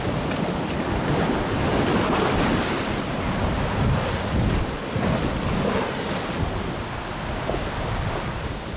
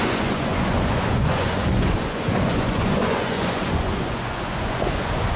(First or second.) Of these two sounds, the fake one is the second